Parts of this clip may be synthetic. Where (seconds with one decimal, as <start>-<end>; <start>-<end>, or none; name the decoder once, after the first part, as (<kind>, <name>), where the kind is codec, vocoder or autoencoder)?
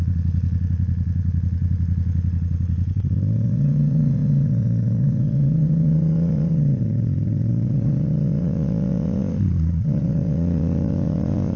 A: 0.0-11.6 (vocoder, Vocos)